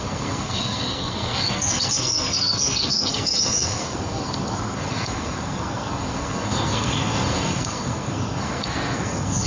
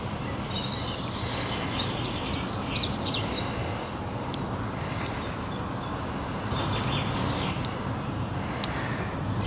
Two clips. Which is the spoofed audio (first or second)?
first